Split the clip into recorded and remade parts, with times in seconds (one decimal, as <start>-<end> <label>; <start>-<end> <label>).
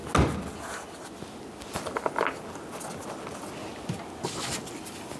0.0-5.2 recorded